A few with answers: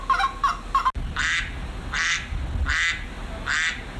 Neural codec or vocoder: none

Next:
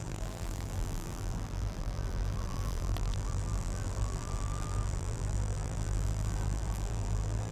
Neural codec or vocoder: vocoder, BigVGAN v2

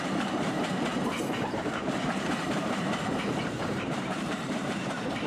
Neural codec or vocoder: vocoder, BigVGAN v2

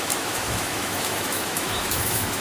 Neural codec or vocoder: autoencoder, DAC-VAE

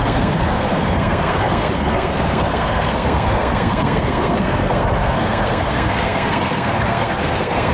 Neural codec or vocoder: codec, SNAC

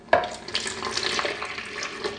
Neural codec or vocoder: none